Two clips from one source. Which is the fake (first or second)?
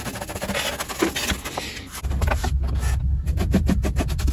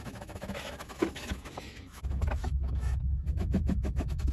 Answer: second